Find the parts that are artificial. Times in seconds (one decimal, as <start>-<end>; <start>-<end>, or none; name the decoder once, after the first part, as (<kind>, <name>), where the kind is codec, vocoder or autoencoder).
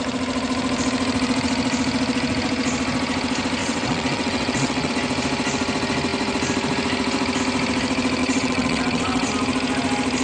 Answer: 3.6-4.9 (vocoder, WaveNeXt); 8.2-9.3